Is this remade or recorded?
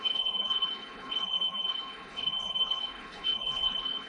remade